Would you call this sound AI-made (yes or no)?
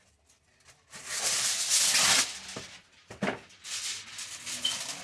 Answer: no